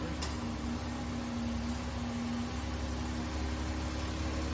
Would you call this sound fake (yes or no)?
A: no